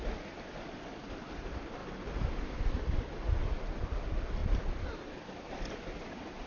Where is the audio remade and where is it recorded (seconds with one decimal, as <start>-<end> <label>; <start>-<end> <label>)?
0.0-6.5 recorded